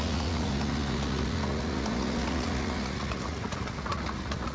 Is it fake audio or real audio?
fake